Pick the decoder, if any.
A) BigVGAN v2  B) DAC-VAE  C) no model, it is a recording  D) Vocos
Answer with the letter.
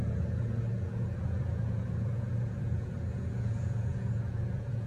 D